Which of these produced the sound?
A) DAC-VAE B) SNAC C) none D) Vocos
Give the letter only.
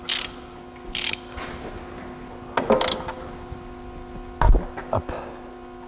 C